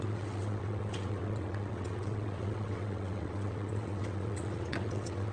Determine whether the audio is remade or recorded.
remade